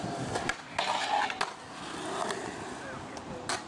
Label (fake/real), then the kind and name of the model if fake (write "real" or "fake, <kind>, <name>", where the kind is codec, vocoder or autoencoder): real